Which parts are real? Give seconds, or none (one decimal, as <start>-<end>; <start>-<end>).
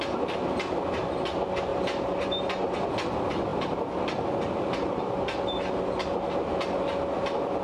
0.0-1.7; 2.9-7.6